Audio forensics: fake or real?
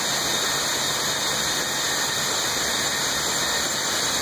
real